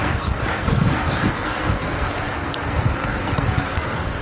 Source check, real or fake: fake